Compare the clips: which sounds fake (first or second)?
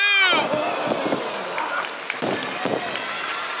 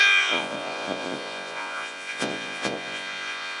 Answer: second